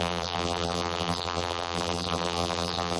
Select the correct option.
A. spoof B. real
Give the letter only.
A